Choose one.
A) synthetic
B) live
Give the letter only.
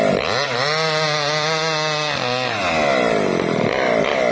B